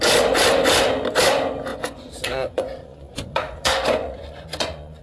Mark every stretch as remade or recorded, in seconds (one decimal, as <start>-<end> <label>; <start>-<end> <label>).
0.0-1.7 recorded; 1.7-5.0 remade